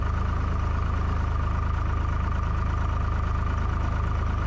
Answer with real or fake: real